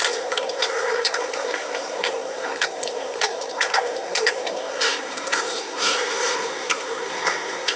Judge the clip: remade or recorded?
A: remade